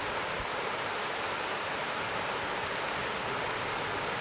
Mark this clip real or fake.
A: real